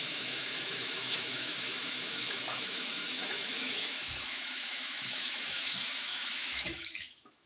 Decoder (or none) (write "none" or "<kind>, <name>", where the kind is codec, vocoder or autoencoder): autoencoder, DAC-VAE